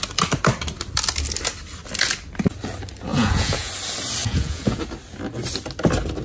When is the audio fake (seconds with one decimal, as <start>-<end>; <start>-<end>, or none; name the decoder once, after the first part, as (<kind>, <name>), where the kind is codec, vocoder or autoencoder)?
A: 3.1-3.7 (vocoder, Vocos); 4.2-4.8